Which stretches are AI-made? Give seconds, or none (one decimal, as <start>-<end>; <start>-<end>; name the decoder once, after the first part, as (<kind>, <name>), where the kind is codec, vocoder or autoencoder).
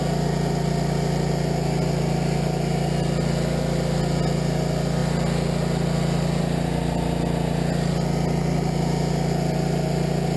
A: none